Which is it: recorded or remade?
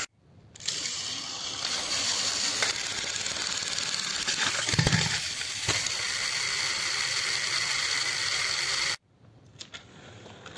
remade